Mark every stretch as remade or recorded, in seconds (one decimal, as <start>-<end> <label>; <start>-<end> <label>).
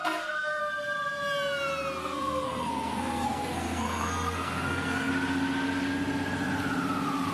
0.0-0.6 remade; 0.6-2.0 recorded; 2.0-5.1 remade; 5.1-7.3 recorded